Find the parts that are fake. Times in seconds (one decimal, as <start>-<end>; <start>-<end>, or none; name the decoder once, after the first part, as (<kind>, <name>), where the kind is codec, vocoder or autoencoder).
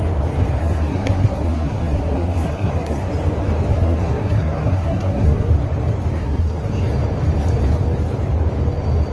0.6-3.1 (codec, SNAC); 3.7-5.5; 6.2-6.7